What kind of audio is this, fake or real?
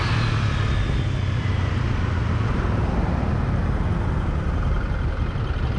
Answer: real